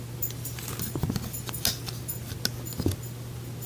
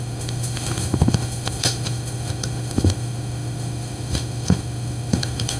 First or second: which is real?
first